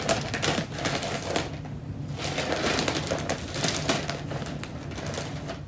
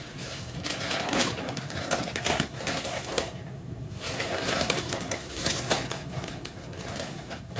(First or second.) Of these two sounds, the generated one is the second